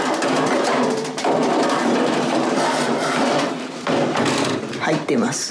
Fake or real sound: fake